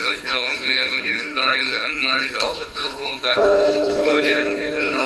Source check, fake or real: fake